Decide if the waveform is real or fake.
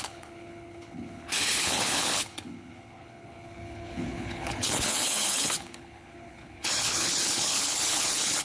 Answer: fake